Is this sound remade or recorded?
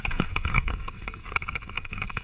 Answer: remade